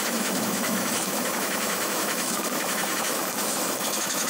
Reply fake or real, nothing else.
fake